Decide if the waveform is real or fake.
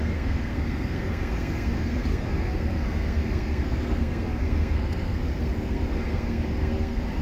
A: fake